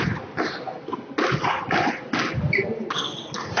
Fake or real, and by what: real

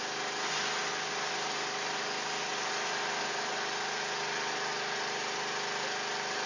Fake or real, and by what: real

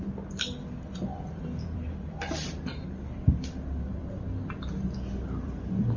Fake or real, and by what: fake, vocoder, BigVGAN v2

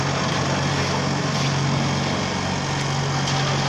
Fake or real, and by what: real